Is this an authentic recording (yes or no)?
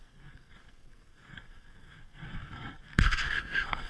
no